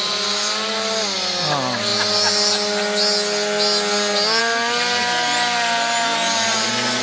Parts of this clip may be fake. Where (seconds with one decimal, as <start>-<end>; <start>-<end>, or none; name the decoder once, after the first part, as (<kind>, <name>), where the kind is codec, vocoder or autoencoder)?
none